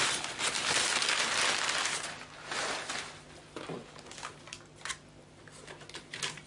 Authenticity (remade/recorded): recorded